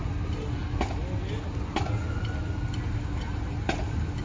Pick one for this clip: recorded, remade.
recorded